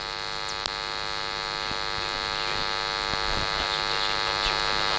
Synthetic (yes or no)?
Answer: no